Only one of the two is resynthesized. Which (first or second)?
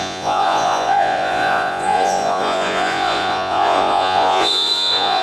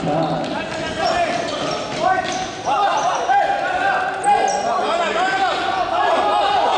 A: first